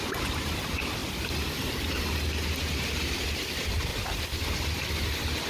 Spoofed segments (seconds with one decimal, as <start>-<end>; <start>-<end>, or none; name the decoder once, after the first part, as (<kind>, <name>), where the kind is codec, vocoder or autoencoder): none